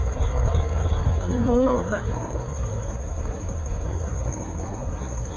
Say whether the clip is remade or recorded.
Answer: remade